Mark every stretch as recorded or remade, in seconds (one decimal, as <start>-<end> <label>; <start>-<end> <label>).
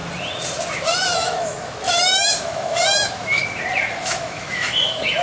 0.0-0.9 recorded; 0.9-3.4 remade; 3.4-3.9 recorded; 3.9-5.2 remade